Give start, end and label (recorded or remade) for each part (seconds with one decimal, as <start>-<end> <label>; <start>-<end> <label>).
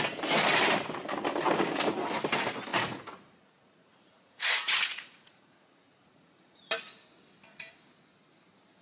0.0-2.7 recorded; 2.7-6.7 remade; 6.7-8.8 recorded